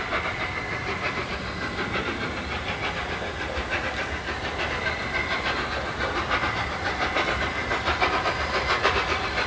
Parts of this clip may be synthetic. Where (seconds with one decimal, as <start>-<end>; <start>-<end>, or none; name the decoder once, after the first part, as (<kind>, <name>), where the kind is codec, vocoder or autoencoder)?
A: none